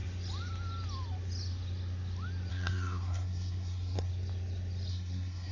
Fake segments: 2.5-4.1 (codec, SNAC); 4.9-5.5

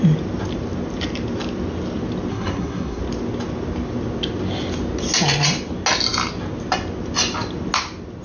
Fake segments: 2.3-3.0 (codec, SNAC)